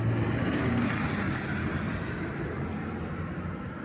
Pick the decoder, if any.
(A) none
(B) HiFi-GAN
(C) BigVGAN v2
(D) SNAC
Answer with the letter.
A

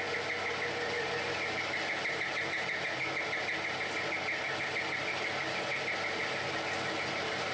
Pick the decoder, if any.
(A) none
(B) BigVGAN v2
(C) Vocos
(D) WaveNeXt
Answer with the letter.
A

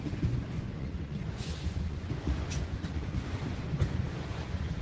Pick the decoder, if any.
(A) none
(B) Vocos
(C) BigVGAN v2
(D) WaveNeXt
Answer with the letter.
B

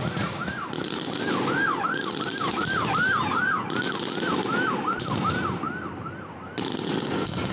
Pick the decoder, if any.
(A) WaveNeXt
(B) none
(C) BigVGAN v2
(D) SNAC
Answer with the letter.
B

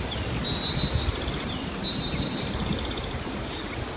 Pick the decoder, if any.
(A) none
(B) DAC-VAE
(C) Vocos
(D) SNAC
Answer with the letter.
A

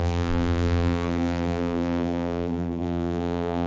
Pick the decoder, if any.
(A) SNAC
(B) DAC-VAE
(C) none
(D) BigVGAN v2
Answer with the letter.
D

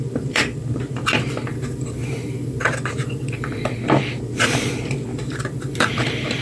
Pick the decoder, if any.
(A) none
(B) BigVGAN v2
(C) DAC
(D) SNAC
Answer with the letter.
B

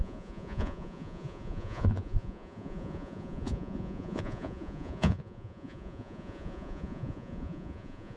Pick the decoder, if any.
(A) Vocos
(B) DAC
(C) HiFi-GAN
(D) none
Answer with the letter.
A